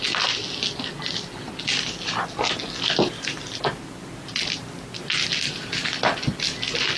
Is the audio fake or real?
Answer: real